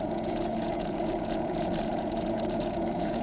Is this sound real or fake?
fake